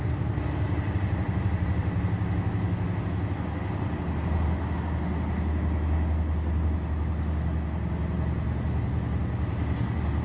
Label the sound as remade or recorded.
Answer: recorded